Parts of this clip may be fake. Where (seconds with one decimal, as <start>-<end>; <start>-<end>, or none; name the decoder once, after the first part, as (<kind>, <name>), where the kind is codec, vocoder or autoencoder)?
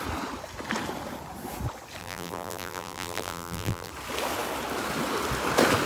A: 2.0-3.9 (vocoder, BigVGAN v2)